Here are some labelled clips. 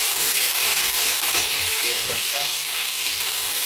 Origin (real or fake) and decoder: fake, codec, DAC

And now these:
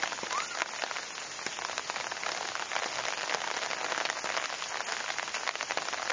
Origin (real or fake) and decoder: real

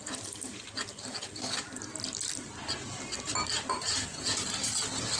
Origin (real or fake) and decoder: real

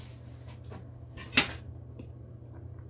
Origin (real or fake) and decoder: real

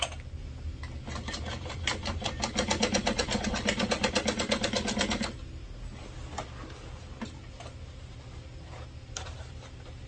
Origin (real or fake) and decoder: real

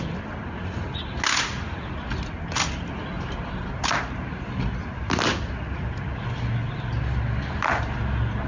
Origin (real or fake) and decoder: real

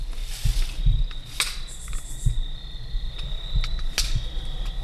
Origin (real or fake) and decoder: real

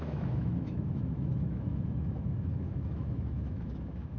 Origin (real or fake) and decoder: fake, autoencoder, DAC-VAE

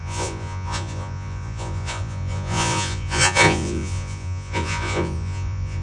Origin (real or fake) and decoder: fake, vocoder, Vocos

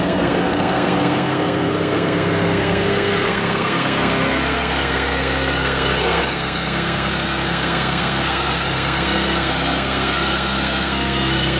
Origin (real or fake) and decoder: fake, codec, SNAC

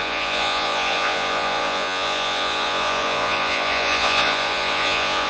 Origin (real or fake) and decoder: fake, vocoder, Vocos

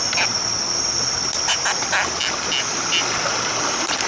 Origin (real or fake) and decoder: real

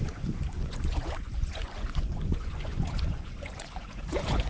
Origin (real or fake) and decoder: fake, vocoder, Vocos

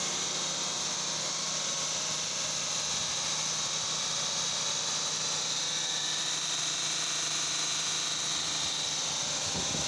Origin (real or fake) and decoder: real